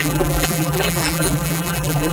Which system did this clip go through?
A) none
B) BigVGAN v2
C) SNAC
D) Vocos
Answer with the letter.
B